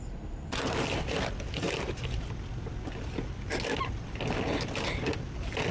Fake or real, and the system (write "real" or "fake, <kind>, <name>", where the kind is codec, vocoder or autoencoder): real